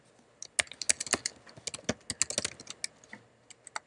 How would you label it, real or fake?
real